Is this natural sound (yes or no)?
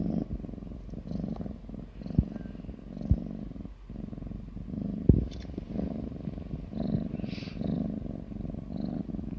yes